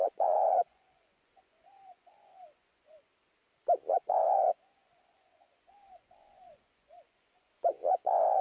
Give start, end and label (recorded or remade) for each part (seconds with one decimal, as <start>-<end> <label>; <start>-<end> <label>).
0.0-3.1 remade; 3.1-3.9 recorded; 3.9-8.4 remade